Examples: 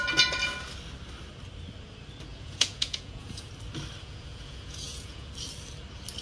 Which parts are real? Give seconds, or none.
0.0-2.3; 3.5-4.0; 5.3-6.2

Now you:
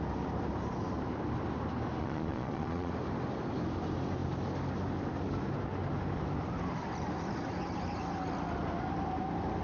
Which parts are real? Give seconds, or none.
0.0-2.0; 2.9-9.6

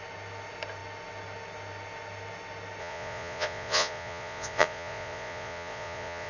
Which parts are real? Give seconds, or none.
0.0-2.8

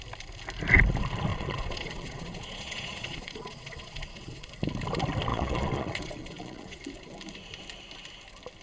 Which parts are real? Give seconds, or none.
0.0-1.3; 4.5-5.3; 6.8-8.6

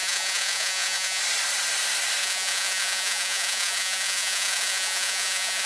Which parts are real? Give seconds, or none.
1.2-2.2

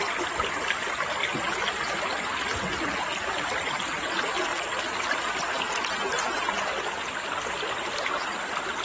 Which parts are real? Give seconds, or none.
0.0-8.8

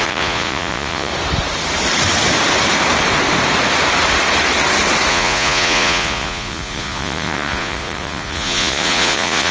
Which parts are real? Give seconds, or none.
1.1-5.1